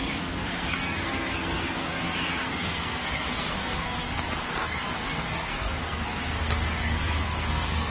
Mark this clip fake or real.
fake